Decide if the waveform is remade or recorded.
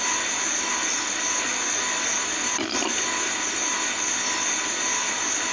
recorded